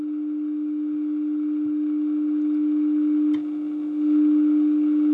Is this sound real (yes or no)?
yes